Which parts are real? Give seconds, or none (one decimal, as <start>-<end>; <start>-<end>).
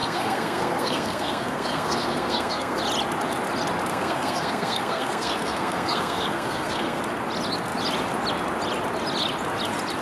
2.8-3.9; 7.0-10.0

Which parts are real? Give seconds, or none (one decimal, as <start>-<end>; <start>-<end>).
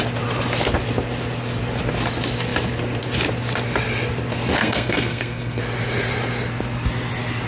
0.0-4.6; 5.6-7.5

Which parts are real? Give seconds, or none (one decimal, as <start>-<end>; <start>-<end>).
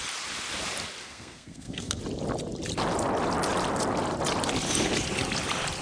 0.0-1.0; 2.0-5.8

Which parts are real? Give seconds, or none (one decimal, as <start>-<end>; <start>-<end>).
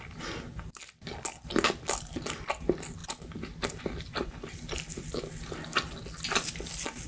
0.0-7.1